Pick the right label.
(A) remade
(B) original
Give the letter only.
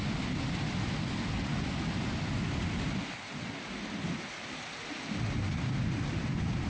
B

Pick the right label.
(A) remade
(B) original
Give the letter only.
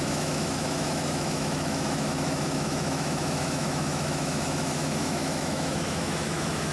A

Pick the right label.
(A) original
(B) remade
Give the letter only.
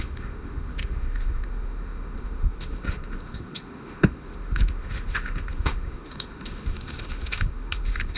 B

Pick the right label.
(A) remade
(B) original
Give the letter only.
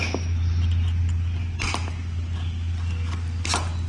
B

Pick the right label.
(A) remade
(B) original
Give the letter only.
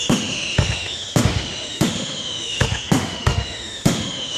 A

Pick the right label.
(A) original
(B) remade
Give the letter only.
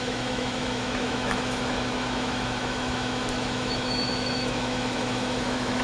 B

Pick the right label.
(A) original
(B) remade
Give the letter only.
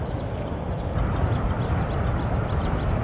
A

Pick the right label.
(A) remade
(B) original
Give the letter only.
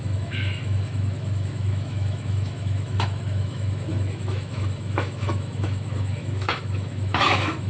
A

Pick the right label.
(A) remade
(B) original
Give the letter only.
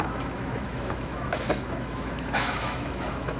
A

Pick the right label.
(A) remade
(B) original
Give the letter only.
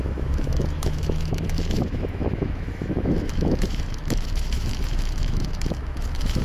A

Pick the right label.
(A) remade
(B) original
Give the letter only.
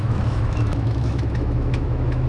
A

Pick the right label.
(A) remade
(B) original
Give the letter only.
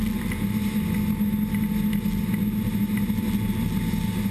B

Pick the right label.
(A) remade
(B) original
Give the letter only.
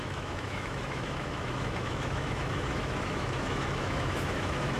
A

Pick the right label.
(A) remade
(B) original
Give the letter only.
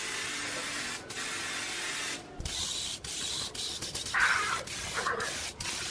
B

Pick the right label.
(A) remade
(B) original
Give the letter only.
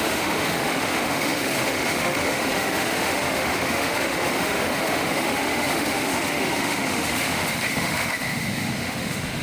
A